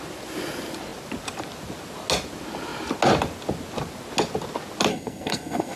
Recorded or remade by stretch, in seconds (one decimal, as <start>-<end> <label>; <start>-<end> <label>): 0.0-4.9 recorded; 4.9-5.8 remade